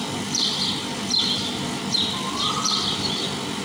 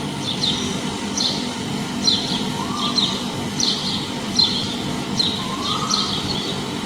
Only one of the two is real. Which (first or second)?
first